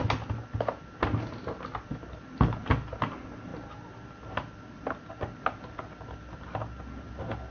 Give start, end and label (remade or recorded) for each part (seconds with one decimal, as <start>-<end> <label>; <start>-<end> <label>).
0.0-7.5 recorded